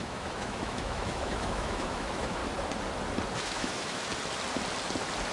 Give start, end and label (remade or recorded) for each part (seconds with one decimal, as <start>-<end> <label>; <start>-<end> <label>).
0.0-2.4 remade; 2.4-3.4 recorded; 3.4-4.1 remade; 4.1-5.3 recorded